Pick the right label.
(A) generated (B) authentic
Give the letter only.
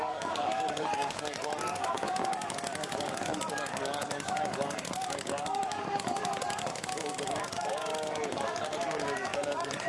A